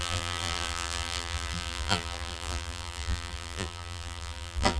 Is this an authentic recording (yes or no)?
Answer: no